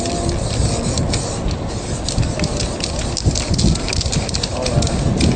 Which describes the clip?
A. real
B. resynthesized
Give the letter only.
A